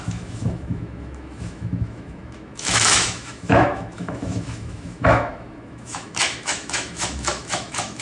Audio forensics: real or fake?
fake